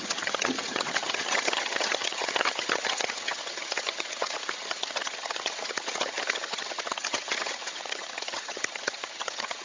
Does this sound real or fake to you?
fake